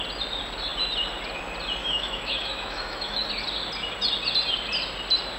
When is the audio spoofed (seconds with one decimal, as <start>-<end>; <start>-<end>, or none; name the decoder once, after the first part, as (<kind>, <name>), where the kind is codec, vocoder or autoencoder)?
1.8-3.3 (autoencoder, DAC-VAE)